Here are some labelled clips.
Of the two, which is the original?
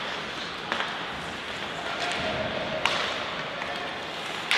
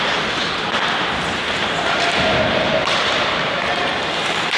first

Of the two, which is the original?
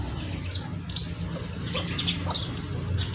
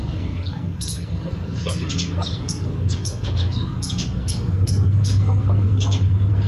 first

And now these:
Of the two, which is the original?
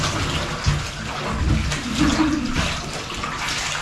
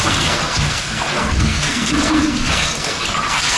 first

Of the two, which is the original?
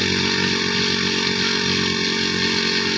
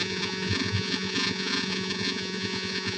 first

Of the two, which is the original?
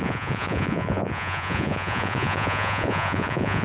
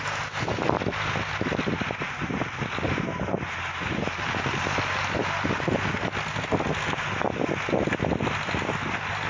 second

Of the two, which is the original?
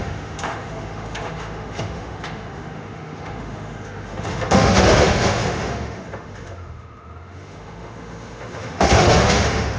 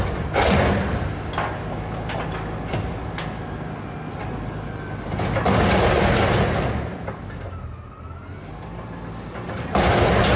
second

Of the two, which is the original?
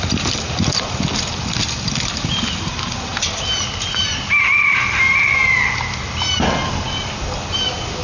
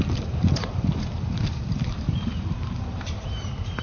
first